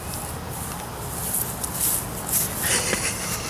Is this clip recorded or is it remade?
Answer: recorded